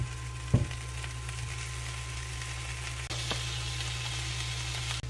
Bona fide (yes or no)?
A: yes